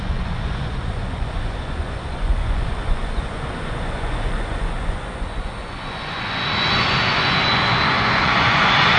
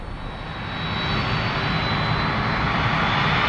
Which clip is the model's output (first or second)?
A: first